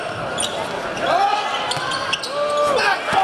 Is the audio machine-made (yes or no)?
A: no